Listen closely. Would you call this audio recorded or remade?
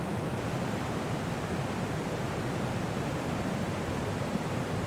remade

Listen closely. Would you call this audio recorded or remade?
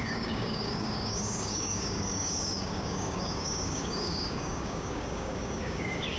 remade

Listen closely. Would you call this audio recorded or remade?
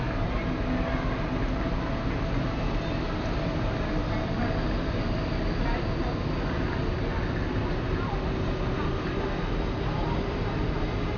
recorded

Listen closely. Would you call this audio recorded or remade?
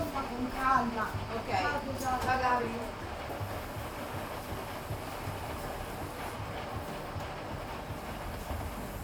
recorded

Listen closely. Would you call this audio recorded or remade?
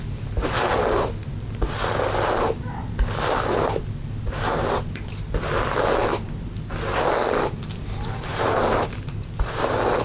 recorded